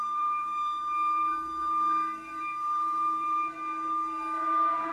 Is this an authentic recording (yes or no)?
no